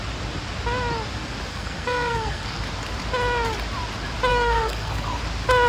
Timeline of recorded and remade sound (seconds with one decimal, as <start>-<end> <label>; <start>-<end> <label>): 0.0-1.5 recorded; 1.5-2.6 remade; 2.6-4.3 recorded; 4.3-5.2 remade; 5.2-5.7 recorded